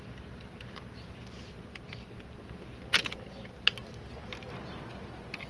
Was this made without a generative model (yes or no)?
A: yes